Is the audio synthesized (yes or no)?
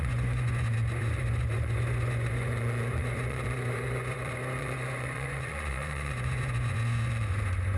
yes